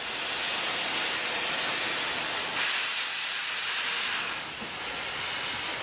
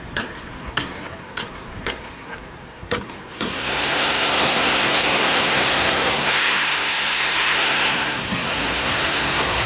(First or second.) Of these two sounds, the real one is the first